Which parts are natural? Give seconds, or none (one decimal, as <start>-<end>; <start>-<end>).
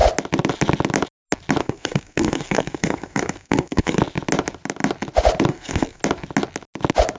0.0-1.6; 4.0-5.5; 6.0-7.2